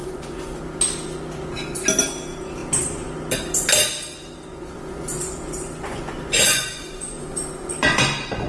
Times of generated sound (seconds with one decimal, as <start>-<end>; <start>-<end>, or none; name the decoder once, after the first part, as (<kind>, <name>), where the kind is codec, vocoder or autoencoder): 0.0-0.6 (vocoder, Vocos); 4.5-8.5